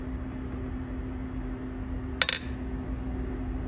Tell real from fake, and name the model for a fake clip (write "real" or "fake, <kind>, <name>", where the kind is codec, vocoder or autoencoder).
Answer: real